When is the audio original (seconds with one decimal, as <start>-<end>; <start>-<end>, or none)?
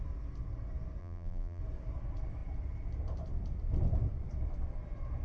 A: 0.0-1.0; 1.6-5.2